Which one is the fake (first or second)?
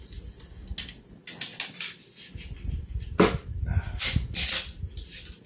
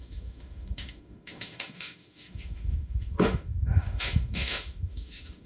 second